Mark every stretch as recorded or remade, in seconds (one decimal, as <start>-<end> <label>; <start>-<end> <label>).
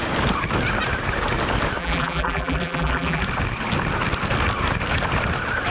0.0-1.8 recorded; 1.8-3.2 remade; 3.2-5.7 recorded